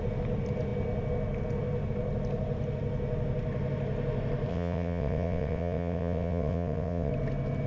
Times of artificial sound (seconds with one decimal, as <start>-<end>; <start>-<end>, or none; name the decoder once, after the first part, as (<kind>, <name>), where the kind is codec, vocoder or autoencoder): 4.5-7.1 (vocoder, WaveNeXt)